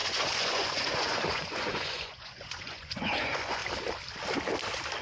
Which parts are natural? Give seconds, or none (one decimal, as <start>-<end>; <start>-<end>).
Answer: 3.6-5.0